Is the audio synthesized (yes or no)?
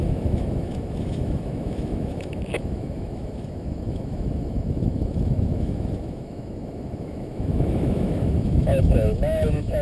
yes